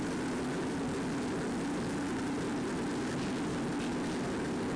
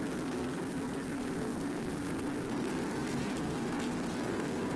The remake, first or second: second